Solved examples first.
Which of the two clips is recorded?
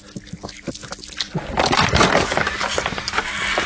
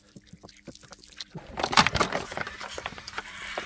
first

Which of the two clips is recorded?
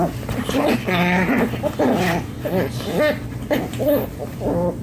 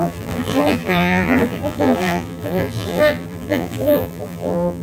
first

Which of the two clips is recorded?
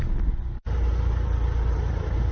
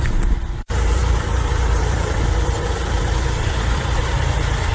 first